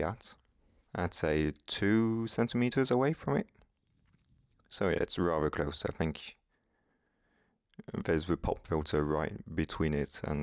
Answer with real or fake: real